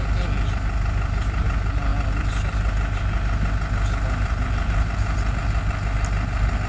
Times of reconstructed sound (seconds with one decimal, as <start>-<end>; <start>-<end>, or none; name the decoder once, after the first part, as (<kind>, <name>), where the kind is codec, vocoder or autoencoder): none

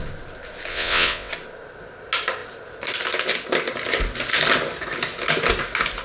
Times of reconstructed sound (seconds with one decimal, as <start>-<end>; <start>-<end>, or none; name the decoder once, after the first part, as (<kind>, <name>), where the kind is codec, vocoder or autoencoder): 0.7-1.3 (vocoder, WaveNeXt)

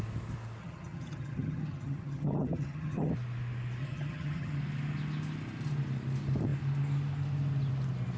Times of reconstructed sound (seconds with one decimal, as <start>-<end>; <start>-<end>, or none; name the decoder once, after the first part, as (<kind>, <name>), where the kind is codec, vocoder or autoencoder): 0.6-3.1 (vocoder, HiFi-GAN); 3.8-4.6